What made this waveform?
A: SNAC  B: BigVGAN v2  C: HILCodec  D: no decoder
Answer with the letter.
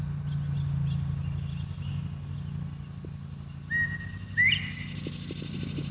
D